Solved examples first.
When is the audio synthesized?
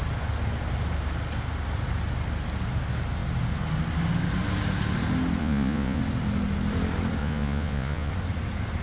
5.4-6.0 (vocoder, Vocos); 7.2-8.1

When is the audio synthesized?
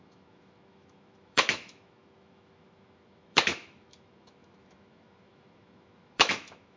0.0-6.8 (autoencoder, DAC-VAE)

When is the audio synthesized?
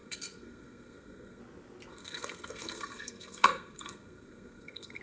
0.0-1.4 (codec, SNAC); 1.9-5.0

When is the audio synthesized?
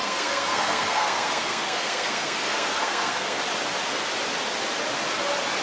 0.0-3.4 (codec, SNAC)